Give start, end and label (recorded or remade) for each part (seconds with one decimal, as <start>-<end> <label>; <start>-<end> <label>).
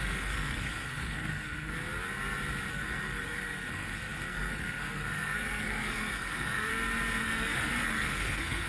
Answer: 0.0-1.7 remade; 1.7-2.7 recorded; 2.7-6.7 remade; 6.7-7.2 recorded; 7.2-8.7 remade